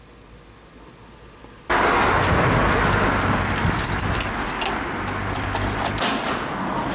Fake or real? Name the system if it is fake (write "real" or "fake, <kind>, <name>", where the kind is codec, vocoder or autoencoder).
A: real